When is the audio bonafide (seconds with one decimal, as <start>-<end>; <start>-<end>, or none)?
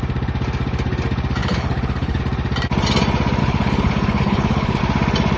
0.0-1.4; 2.2-3.4; 4.8-5.4